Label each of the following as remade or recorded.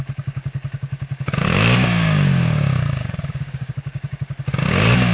remade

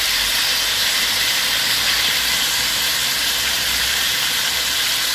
remade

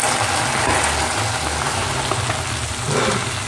recorded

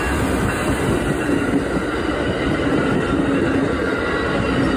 recorded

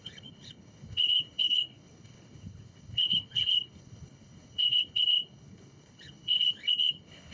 remade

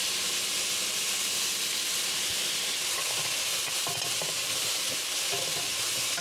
recorded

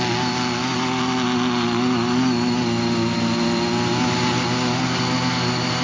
recorded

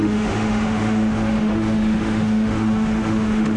remade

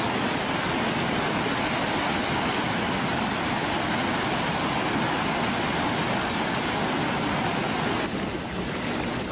recorded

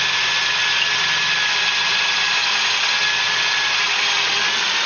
recorded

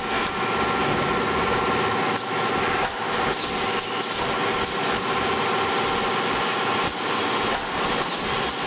recorded